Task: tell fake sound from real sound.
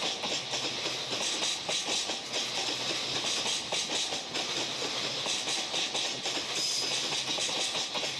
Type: real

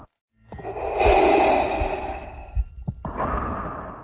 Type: real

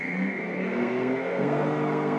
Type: fake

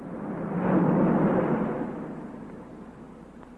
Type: real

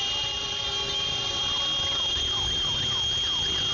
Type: real